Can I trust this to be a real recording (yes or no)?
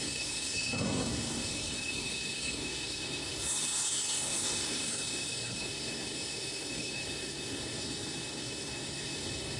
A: no